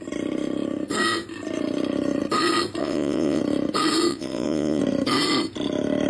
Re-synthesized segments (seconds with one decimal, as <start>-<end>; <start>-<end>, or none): 2.8-3.4; 4.1-4.8